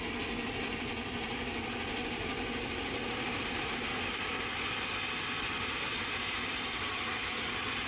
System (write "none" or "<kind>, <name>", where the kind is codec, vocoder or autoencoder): none